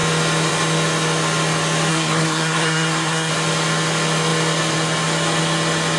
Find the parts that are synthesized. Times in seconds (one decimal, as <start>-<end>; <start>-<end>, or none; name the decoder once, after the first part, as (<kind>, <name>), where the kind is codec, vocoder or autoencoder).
1.9-3.3 (codec, SNAC)